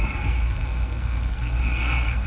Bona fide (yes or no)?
no